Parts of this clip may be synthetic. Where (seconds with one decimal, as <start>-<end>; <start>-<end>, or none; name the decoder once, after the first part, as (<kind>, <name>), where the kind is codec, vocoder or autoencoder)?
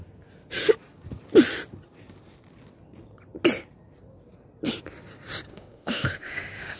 5.5-6.8 (autoencoder, DAC-VAE)